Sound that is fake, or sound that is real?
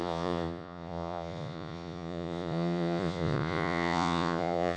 fake